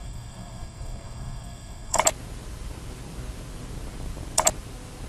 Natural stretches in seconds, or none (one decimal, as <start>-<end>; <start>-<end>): 2.0-5.1